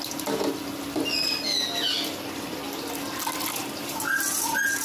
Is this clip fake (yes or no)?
no